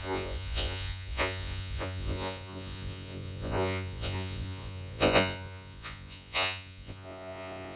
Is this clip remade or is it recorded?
remade